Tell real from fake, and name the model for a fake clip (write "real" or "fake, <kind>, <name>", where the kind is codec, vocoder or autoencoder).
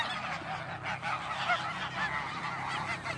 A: real